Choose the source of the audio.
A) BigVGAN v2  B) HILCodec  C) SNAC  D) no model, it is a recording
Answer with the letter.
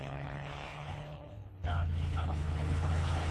B